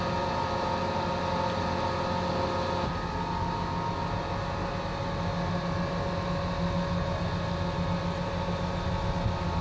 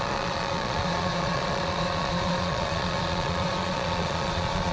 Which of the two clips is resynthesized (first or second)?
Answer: second